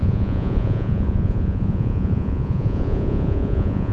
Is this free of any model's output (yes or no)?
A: no